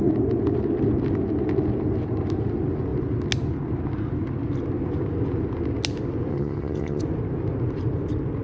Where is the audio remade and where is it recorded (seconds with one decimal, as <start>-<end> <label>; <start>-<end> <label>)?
0.0-6.3 recorded; 6.3-7.0 remade; 7.0-8.4 recorded